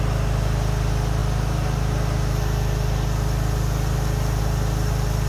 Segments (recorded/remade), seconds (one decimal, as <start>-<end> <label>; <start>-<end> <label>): 0.0-5.3 recorded